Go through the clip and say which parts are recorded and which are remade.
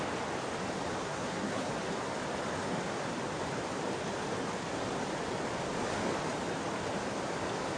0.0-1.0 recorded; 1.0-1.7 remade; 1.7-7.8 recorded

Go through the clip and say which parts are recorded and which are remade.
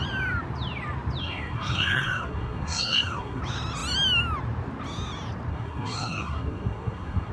0.0-1.2 recorded; 1.2-3.4 remade; 3.4-5.5 recorded; 5.5-7.3 remade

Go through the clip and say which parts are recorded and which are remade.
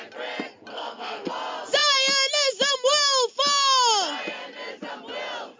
0.0-0.7 recorded; 0.7-1.3 remade; 1.3-5.6 recorded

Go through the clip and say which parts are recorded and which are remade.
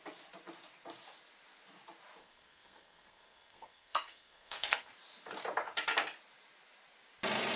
0.0-2.2 recorded; 2.2-4.9 remade; 4.9-7.6 recorded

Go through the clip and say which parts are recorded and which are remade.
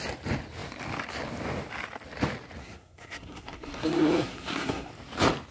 0.0-2.6 recorded; 2.6-4.9 remade; 4.9-5.5 recorded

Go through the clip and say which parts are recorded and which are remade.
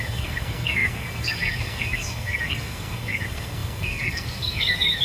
0.0-5.0 remade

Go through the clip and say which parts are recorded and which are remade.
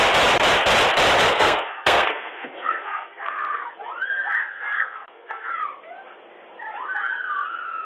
0.0-1.3 recorded; 1.3-3.7 remade; 3.7-4.4 recorded; 4.4-5.5 remade; 5.5-7.8 recorded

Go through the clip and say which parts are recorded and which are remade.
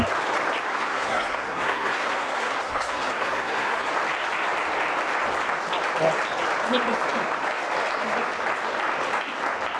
0.0-0.7 recorded; 0.7-3.9 remade; 3.9-9.8 recorded